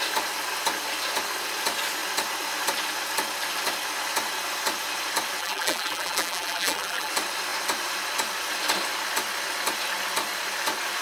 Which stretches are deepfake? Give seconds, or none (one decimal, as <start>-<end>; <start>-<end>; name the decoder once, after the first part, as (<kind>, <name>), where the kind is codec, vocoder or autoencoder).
5.4-7.1 (vocoder, BigVGAN v2)